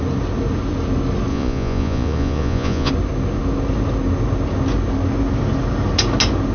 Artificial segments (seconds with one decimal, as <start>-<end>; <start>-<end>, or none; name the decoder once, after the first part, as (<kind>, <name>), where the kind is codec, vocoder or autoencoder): 1.3-2.9 (vocoder, Vocos)